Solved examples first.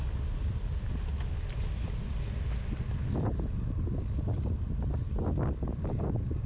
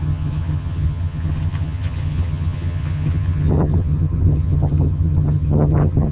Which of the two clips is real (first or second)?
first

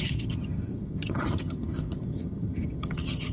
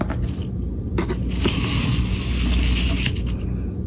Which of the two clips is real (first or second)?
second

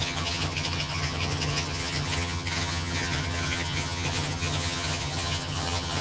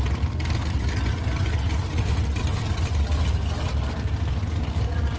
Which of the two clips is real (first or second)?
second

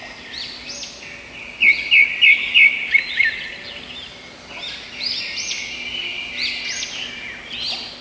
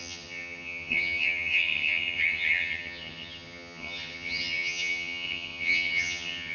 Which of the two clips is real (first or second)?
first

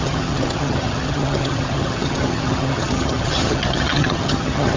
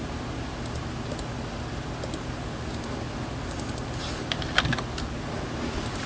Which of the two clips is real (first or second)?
second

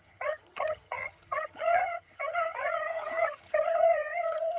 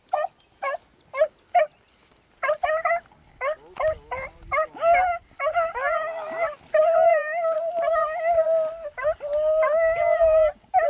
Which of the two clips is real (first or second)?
second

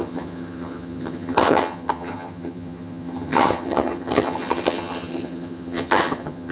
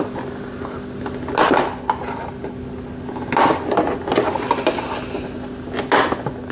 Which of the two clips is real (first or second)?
second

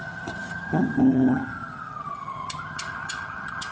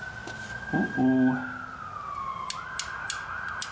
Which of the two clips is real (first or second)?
second